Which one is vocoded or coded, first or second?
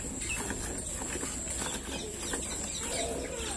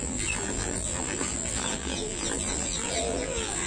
second